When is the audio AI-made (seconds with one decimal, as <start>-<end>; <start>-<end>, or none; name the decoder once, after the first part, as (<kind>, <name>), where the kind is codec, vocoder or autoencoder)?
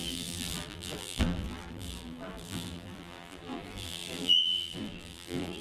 0.0-5.6 (vocoder, BigVGAN v2)